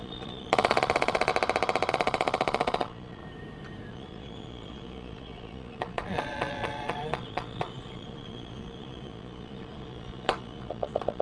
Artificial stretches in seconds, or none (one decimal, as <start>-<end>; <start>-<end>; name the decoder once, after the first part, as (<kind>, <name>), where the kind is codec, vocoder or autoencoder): 0.0-1.3 (vocoder, Vocos); 1.9-3.2; 3.9-11.2